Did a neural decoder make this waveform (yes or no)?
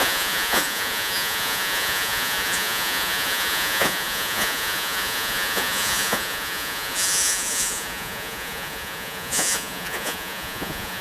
yes